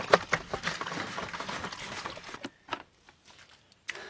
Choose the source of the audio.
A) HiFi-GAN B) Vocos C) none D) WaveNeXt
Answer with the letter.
C